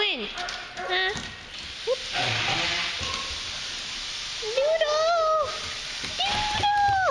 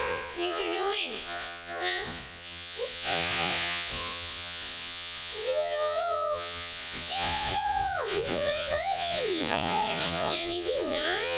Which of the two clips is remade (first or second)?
second